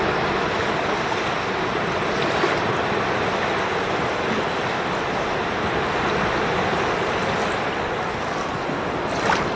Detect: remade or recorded recorded